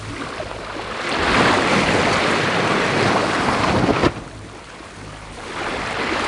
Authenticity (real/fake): real